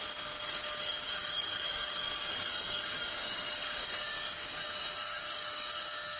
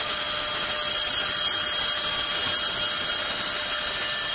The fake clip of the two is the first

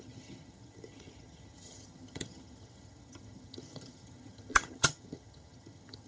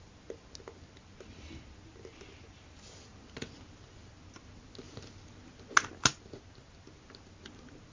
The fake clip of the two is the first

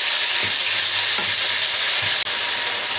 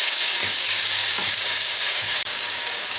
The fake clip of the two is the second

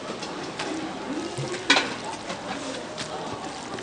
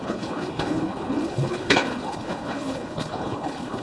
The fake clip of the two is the second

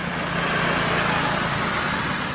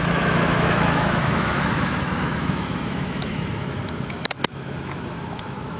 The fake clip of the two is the second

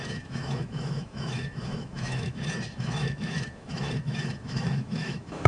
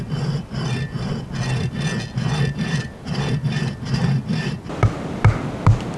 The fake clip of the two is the first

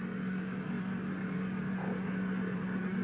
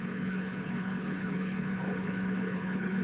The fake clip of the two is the second